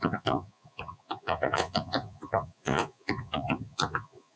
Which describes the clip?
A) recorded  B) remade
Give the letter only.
B